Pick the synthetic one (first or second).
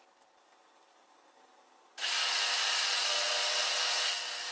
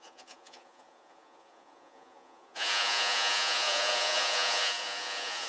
second